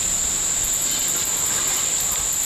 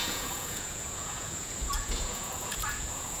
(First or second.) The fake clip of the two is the second